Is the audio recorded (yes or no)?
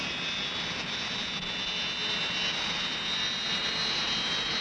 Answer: yes